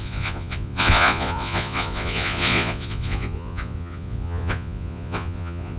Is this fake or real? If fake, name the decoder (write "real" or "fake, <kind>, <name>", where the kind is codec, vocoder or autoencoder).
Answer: fake, vocoder, Vocos